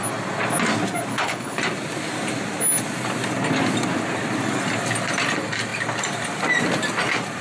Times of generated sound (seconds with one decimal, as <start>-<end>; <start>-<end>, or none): 1.1-1.6